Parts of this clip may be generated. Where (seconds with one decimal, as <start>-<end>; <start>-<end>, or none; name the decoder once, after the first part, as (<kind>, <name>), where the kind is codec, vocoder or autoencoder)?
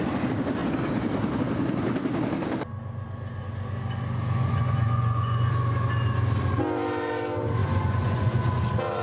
4.4-5.5 (vocoder, Vocos); 7.6-8.6